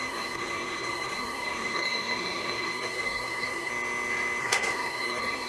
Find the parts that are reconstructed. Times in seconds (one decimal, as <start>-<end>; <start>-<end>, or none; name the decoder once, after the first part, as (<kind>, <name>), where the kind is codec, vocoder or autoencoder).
0.0-3.7 (codec, SNAC); 4.4-5.5